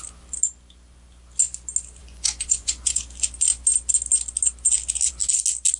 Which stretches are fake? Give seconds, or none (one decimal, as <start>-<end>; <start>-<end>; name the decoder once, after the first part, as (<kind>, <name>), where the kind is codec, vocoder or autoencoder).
2.0-3.0 (vocoder, Vocos)